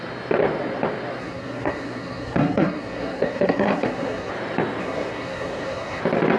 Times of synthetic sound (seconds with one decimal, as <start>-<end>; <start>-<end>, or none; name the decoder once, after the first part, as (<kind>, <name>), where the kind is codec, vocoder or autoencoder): 1.2-4.3 (codec, SNAC); 4.8-6.0